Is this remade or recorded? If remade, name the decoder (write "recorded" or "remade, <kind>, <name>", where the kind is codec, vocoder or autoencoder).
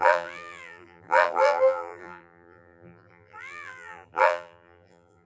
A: remade, vocoder, BigVGAN v2